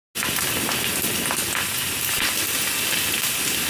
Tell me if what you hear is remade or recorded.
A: recorded